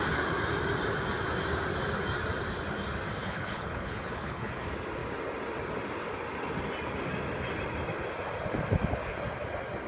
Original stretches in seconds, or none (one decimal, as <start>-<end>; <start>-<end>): 0.0-3.2; 4.6-9.9